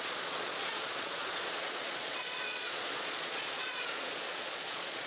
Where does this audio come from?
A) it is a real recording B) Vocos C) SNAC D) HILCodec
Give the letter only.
B